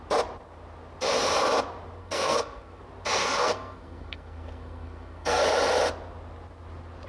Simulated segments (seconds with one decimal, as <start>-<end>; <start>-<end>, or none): 2.0-2.8; 3.2-5.4